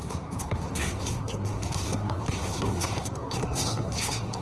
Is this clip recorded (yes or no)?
no